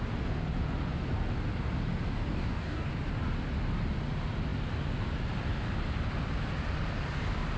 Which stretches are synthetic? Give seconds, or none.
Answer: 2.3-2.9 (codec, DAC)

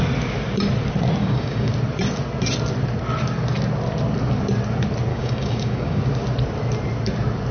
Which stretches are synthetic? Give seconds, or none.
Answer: 1.2-1.7 (codec, DAC); 5.1-6.0